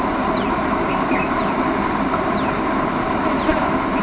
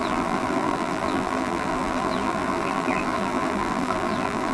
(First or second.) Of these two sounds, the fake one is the second